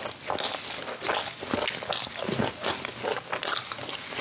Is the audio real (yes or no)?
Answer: yes